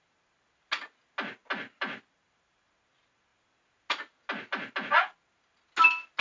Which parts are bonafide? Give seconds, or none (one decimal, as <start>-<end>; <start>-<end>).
0.0-6.2